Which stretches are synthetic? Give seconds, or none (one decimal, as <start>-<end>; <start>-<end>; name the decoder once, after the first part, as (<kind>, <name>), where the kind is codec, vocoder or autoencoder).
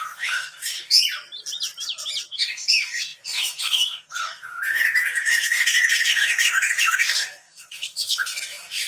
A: 0.0-1.0 (codec, DAC); 2.3-8.9